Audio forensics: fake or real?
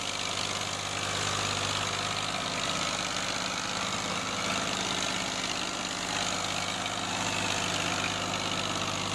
real